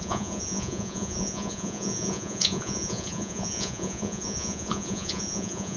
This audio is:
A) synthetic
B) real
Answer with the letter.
A